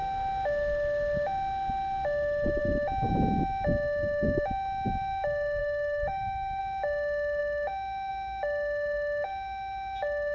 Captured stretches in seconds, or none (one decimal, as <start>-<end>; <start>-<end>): 0.0-5.6; 6.6-10.3